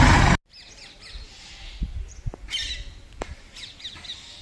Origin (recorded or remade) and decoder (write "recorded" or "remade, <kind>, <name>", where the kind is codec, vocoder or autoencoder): recorded